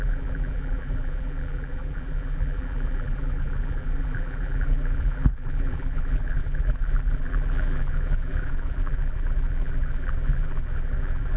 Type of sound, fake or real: fake